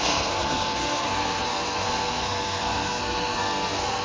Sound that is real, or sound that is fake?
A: fake